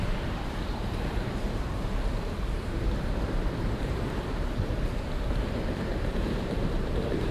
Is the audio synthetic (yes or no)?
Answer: yes